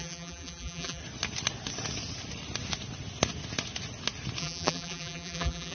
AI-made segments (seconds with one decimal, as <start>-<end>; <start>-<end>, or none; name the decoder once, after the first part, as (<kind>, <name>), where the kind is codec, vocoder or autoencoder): 0.0-1.0 (vocoder, BigVGAN v2); 4.4-5.7